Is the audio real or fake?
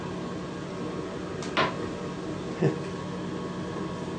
real